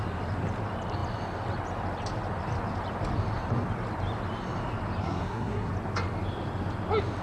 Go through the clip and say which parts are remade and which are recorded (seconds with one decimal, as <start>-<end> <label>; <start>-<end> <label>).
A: 0.0-5.0 recorded; 5.0-5.7 remade; 5.7-7.2 recorded